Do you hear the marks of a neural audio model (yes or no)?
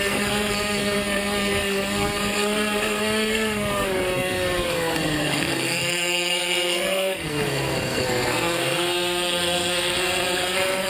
yes